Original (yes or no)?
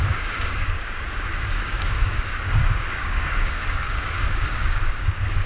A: no